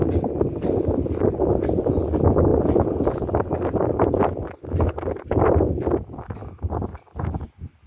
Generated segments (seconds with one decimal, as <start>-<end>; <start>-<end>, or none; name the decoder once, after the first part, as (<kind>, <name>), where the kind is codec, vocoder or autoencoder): none